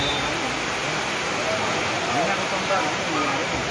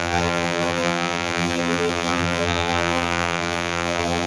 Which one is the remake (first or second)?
second